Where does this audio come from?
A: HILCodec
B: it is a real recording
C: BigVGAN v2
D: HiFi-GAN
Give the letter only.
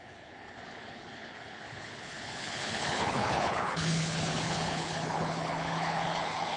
A